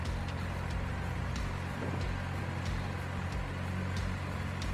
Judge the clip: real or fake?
real